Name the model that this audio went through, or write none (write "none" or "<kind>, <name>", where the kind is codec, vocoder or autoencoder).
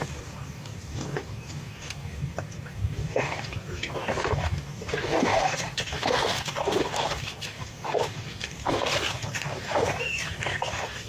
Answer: codec, DAC